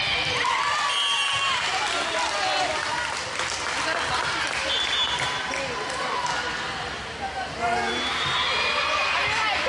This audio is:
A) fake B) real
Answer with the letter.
B